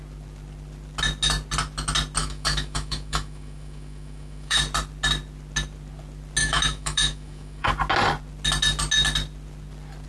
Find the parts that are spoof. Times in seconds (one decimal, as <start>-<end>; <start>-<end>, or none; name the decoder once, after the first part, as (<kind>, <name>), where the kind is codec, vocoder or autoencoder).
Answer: 2.2-4.6 (autoencoder, DAC-VAE); 6.4-7.7